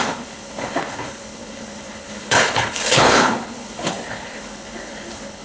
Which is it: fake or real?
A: fake